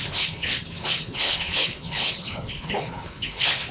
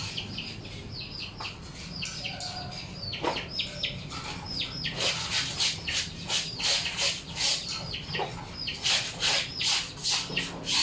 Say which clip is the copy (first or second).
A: first